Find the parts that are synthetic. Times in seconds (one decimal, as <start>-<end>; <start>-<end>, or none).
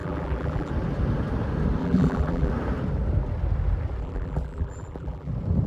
0.0-0.7; 1.8-2.5; 4.0-5.3